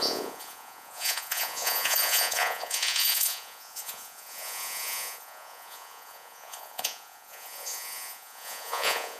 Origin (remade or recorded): remade